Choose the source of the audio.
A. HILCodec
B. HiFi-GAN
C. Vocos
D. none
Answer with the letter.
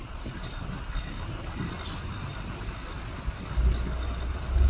D